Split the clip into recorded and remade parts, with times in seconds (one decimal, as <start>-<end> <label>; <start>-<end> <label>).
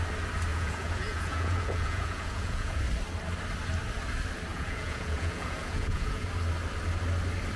0.0-0.5 recorded; 0.5-2.8 remade; 2.8-4.5 recorded; 4.5-6.3 remade; 6.3-7.6 recorded